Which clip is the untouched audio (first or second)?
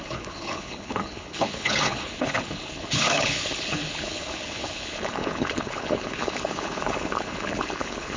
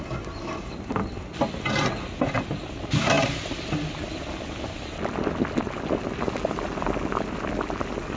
second